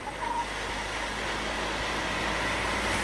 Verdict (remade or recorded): recorded